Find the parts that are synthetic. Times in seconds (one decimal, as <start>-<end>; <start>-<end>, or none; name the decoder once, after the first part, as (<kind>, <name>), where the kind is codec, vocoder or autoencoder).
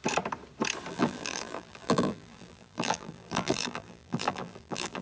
0.9-5.0 (vocoder, BigVGAN v2)